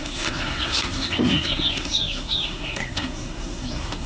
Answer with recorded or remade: remade